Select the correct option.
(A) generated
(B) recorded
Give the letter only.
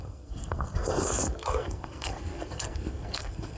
A